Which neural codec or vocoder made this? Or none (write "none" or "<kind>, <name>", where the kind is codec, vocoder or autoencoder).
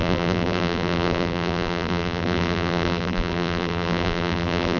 vocoder, BigVGAN v2